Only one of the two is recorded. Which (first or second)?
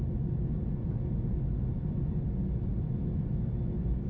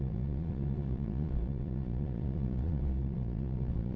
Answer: first